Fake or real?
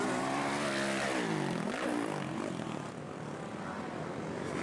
real